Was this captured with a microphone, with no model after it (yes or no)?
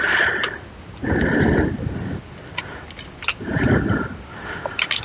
yes